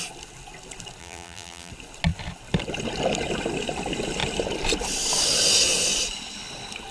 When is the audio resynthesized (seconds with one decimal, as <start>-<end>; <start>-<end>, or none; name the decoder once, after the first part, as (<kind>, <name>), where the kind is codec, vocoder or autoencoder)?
1.0-1.7 (vocoder, BigVGAN v2)